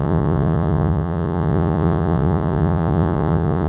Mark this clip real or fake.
fake